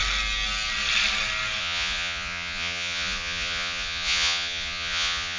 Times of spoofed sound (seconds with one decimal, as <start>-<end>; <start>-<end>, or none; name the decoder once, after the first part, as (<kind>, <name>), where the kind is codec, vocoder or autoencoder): 1.6-5.4 (vocoder, Vocos)